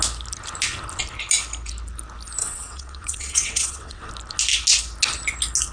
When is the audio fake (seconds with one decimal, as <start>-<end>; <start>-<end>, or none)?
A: 2.4-4.1